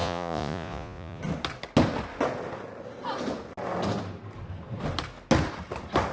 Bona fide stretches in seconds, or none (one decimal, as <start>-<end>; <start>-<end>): 1.2-6.1